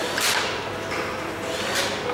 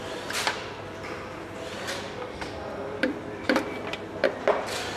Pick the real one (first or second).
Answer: first